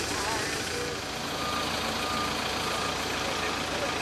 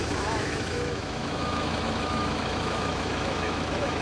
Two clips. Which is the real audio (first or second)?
first